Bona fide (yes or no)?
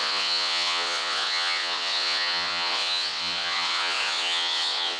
no